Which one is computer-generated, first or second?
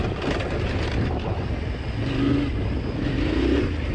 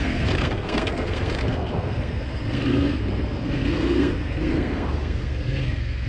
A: second